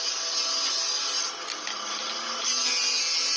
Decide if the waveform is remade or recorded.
recorded